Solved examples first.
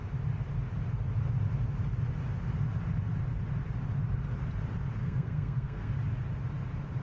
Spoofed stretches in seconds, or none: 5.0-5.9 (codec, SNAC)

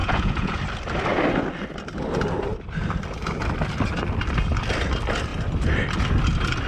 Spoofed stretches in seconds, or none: 0.0-0.6 (vocoder, Vocos)

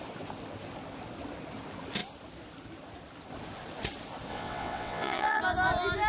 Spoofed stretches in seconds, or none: 4.3-5.4 (vocoder, WaveNeXt)

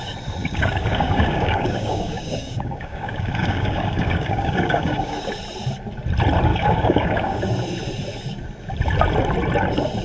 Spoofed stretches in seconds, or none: 0.4-5.3 (codec, DAC); 6.5-7.4

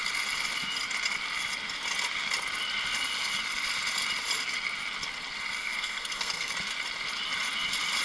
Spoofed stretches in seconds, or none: 5.6-6.5 (codec, SNAC)

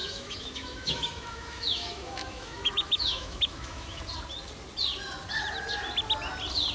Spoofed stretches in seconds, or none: 0.0-4.0 (autoencoder, DAC-VAE)

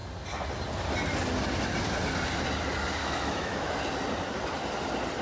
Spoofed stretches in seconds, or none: 3.0-3.7 (autoencoder, DAC-VAE)